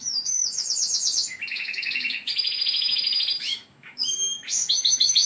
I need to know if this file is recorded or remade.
remade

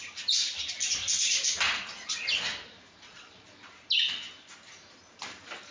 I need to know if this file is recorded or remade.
recorded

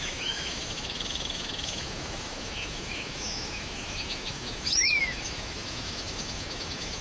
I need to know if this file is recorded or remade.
remade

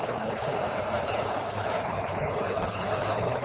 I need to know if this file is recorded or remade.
remade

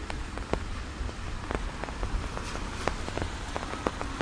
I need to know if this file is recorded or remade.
recorded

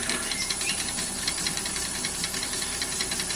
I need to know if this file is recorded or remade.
remade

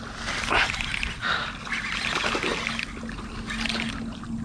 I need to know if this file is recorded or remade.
recorded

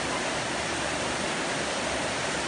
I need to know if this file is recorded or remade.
recorded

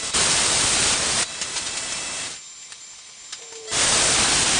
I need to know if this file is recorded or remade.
recorded